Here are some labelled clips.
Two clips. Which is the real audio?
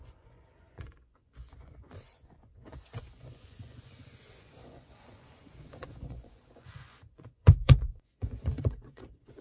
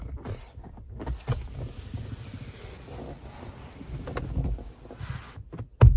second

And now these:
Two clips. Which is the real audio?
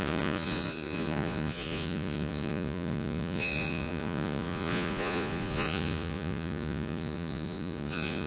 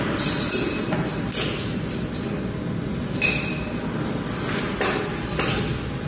second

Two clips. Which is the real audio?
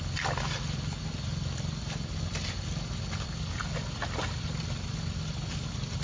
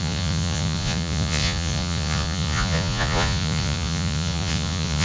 first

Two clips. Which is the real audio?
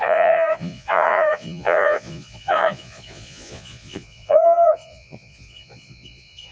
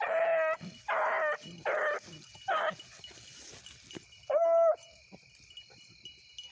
second